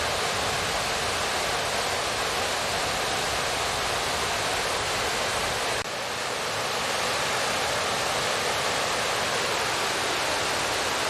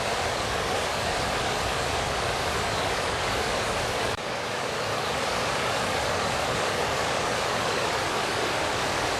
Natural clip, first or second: first